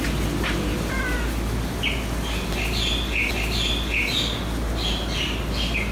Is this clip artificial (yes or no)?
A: no